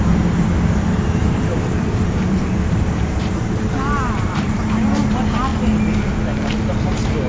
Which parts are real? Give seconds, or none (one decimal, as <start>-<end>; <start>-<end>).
0.0-1.2; 4.9-7.3